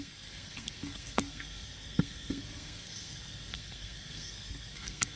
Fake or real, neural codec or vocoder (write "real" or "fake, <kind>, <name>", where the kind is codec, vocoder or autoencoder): fake, codec, SNAC